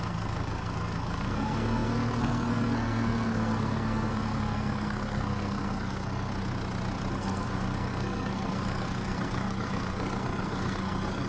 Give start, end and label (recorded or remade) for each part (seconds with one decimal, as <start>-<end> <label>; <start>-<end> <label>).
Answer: 0.0-6.3 remade; 6.3-7.1 recorded; 7.1-11.3 remade

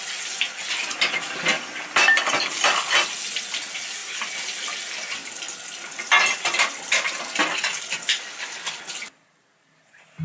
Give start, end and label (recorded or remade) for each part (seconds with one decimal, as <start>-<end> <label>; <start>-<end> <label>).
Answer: 0.0-10.2 recorded

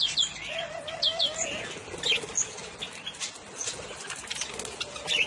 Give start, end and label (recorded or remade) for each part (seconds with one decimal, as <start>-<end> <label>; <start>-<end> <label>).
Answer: 0.0-5.3 recorded

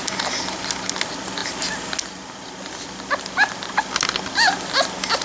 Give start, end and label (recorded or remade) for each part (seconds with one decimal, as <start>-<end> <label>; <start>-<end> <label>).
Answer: 0.0-5.2 recorded